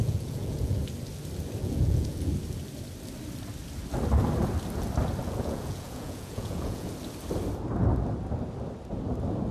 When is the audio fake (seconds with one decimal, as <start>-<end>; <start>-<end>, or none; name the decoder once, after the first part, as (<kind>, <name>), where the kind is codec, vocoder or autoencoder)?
0.0-0.8 (vocoder, Vocos); 1.6-2.3; 5.2-6.9